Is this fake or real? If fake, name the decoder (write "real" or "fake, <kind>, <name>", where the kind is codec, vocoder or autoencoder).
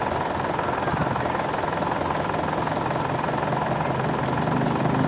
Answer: real